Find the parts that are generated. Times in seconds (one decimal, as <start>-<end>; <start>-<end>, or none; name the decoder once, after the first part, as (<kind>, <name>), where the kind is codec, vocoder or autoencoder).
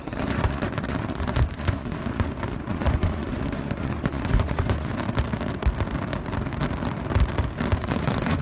0.0-4.9 (vocoder, Vocos); 7.8-8.4